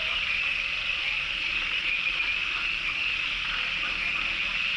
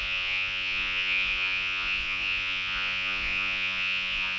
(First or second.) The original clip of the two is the first